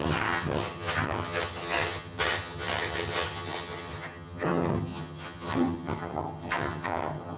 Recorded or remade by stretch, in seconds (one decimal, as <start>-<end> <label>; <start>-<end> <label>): 0.0-7.4 remade